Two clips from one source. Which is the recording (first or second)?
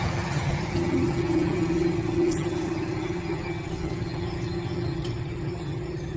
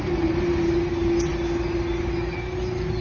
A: second